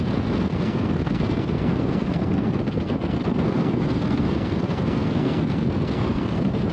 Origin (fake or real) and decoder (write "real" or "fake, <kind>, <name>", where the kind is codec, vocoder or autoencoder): fake, codec, SNAC